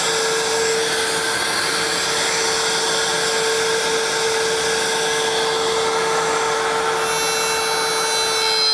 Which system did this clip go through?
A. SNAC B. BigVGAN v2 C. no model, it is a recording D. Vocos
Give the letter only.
C